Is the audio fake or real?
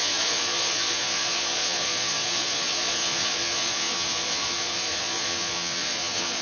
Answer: fake